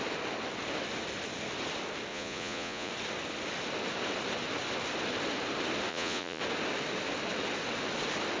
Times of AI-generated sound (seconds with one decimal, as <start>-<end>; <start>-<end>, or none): 2.1-2.9; 5.9-6.4